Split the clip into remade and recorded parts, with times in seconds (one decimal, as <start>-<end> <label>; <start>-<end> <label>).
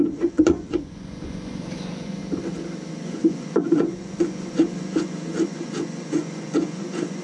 0.0-2.2 remade; 2.2-2.9 recorded; 2.9-7.2 remade